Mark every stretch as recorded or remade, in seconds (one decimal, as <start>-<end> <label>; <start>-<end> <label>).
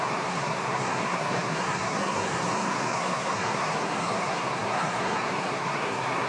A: 0.0-6.3 remade